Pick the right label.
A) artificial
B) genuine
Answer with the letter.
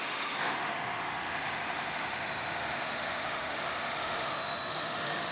A